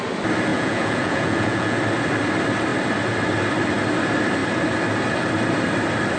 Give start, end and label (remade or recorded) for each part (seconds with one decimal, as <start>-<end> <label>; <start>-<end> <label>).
0.0-0.5 recorded; 0.5-1.8 remade; 1.8-6.2 recorded